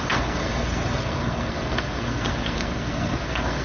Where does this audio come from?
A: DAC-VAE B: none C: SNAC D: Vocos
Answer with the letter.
C